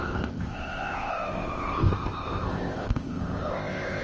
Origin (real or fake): fake